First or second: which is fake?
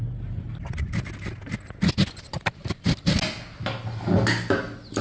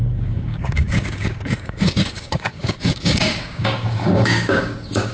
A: second